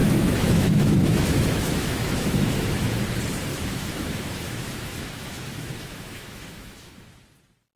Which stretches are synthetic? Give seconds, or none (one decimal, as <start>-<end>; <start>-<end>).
0.0-2.9; 3.5-7.2